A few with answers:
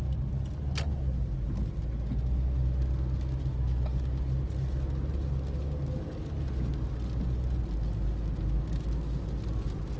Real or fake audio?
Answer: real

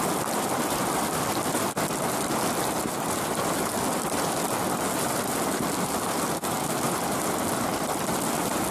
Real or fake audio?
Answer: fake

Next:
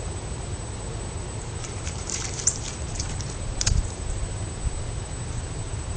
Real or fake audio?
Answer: fake